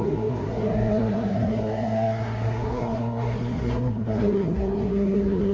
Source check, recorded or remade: remade